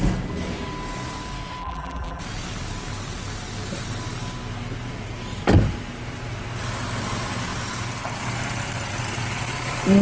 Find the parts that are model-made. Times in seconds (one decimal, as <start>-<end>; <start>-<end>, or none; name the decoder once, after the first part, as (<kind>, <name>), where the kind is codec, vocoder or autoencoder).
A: 1.6-2.2 (vocoder, BigVGAN v2)

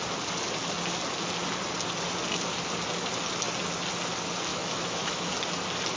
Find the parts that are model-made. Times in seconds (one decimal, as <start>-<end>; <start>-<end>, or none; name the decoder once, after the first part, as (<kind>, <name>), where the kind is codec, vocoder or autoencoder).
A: 4.5-5.3 (autoencoder, DAC-VAE)

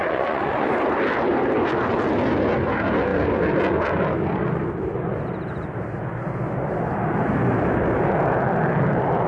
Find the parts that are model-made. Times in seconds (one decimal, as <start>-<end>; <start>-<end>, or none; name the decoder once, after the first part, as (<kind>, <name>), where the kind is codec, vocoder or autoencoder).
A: 0.0-0.7 (vocoder, Vocos)

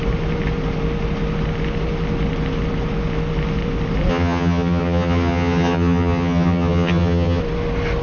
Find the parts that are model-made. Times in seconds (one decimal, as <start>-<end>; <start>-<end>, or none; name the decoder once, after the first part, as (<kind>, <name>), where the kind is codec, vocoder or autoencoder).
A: 4.1-7.4 (vocoder, HiFi-GAN)

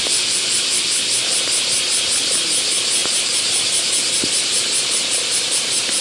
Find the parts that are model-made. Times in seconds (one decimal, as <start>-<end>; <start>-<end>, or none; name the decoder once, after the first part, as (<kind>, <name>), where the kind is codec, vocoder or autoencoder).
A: none

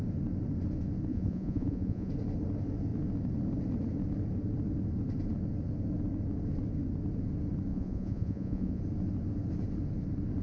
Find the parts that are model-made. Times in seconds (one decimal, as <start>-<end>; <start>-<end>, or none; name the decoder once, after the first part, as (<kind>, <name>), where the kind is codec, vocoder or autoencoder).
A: 1.1-2.1 (vocoder, Vocos); 7.7-8.8

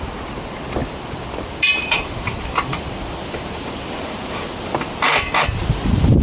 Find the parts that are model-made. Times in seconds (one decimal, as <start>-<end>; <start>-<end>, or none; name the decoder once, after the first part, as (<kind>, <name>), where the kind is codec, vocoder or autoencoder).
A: 0.8-4.0 (vocoder, BigVGAN v2)